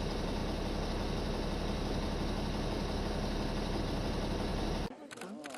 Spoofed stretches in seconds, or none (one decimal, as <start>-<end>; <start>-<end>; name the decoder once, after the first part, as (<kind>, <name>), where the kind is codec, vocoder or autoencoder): none